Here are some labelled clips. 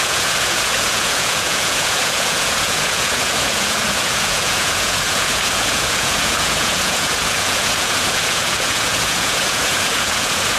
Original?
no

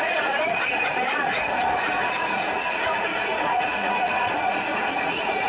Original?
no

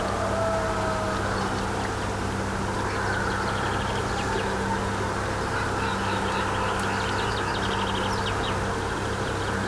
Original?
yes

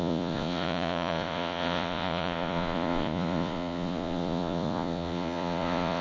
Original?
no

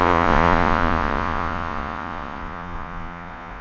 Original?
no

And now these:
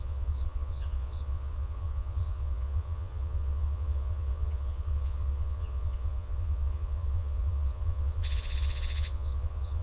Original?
no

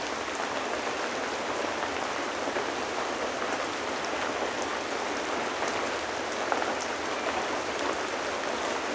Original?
yes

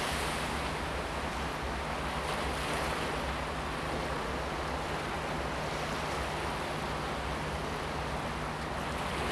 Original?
yes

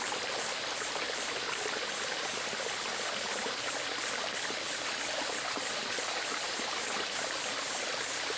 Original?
yes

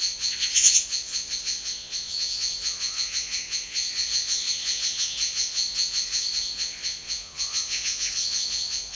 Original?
no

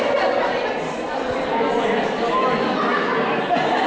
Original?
yes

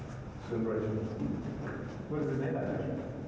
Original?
yes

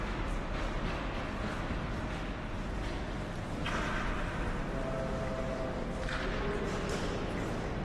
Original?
yes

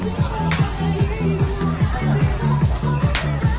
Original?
yes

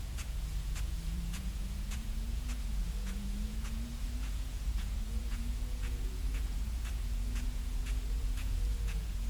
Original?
no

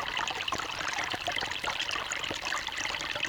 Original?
yes